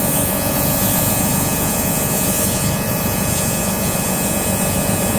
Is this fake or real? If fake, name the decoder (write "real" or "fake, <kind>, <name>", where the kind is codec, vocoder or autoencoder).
fake, vocoder, Vocos